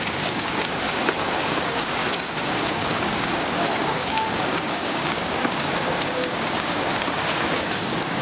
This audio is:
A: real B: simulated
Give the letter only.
B